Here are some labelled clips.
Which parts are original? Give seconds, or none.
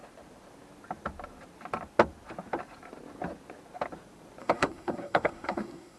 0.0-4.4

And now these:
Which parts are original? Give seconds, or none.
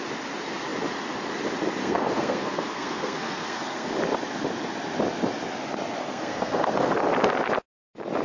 0.0-1.8; 3.9-6.0; 6.9-8.2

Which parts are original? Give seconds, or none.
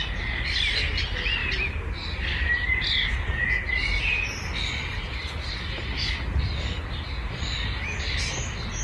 0.0-8.8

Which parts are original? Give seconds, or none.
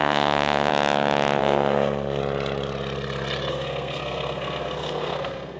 0.7-1.4; 2.2-3.5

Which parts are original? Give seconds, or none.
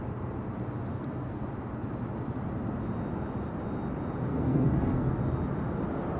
0.0-0.9; 1.5-4.3; 5.2-6.2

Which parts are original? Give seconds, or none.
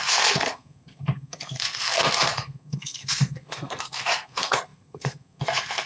none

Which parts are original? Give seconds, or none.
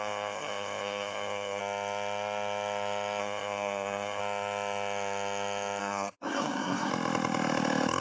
1.6-3.2; 4.2-5.8; 6.9-8.0